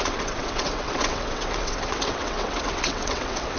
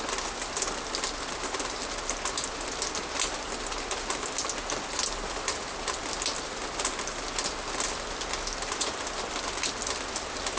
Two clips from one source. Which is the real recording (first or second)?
second